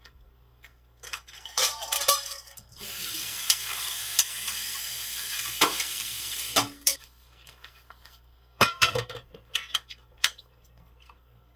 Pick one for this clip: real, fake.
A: fake